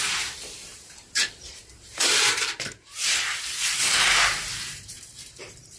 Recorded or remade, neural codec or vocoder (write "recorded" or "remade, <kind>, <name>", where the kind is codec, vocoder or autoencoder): remade, vocoder, BigVGAN v2